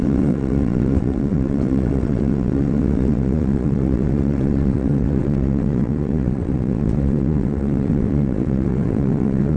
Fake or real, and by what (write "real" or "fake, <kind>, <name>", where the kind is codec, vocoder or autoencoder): fake, vocoder, WaveNeXt